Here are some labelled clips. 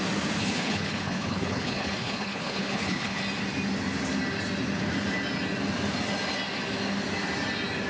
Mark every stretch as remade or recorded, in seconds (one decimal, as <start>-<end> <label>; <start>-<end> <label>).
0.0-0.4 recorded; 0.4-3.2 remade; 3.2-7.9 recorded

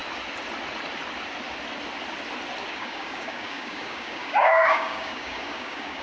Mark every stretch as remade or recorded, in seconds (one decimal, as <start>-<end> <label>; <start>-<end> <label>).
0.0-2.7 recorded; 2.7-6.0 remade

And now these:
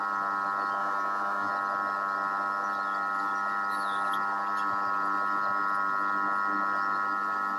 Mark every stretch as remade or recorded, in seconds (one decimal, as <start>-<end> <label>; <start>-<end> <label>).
0.0-0.8 recorded; 0.8-1.5 remade; 1.5-7.6 recorded

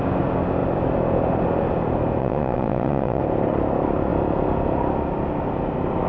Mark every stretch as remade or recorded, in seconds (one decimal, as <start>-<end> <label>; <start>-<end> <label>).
0.0-2.2 recorded; 2.2-3.2 remade; 3.2-6.1 recorded